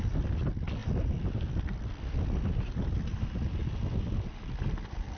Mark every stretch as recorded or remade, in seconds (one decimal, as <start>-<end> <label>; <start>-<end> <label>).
0.0-5.2 recorded